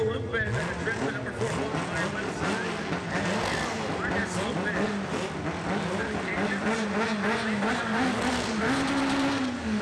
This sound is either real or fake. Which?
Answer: real